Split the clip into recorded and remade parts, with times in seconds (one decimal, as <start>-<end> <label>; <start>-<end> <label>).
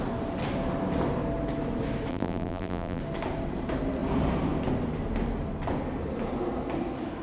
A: 0.0-2.1 recorded; 2.1-3.0 remade; 3.0-7.2 recorded